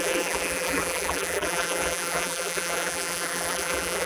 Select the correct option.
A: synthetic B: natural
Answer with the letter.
A